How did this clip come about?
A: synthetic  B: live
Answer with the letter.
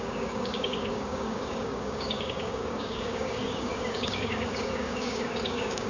A